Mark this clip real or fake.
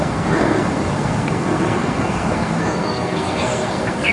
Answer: fake